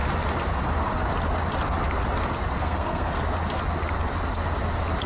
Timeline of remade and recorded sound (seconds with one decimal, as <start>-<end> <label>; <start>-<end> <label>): 0.0-2.6 recorded; 2.6-3.2 remade; 3.2-5.1 recorded